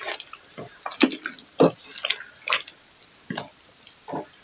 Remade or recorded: recorded